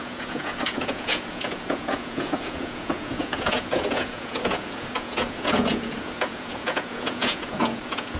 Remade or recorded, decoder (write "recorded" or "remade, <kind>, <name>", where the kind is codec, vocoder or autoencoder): remade, vocoder, Vocos